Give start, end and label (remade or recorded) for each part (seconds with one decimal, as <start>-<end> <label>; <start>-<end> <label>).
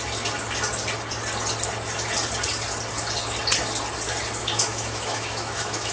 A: 0.0-4.4 recorded; 4.4-5.9 remade